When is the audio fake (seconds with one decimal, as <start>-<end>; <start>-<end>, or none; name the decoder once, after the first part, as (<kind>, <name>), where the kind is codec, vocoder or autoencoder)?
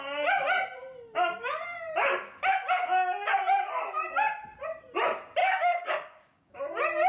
5.4-6.6 (codec, DAC)